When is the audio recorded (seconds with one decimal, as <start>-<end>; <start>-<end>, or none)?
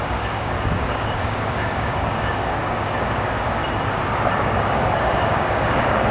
3.6-4.4